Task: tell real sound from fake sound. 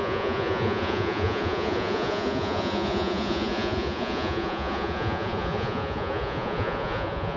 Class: fake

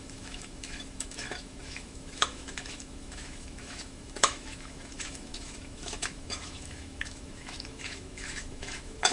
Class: fake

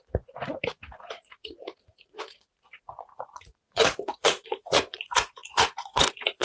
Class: fake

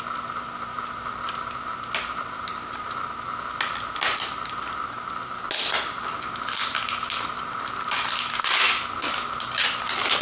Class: real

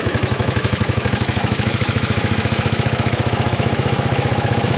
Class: fake